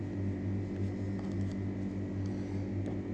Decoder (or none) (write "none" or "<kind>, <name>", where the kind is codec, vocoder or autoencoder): none